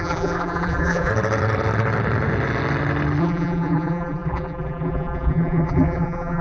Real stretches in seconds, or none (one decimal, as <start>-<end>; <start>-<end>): 1.1-3.2